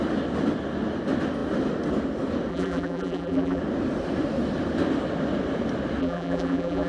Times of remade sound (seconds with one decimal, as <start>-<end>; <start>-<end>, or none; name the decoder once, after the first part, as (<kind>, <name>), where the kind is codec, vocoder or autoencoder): 2.5-3.6 (vocoder, BigVGAN v2); 6.0-6.9